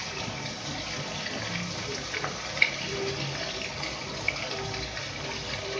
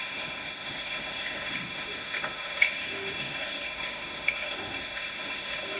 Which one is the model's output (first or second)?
second